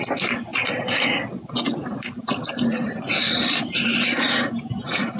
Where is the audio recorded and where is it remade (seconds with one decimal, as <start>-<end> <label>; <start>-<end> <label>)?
0.0-5.2 recorded